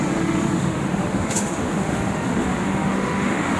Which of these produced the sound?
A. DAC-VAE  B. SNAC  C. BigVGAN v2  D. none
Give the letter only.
A